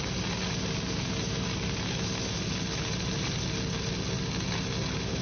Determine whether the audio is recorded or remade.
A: recorded